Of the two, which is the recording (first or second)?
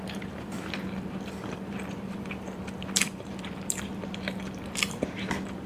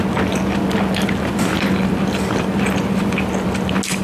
second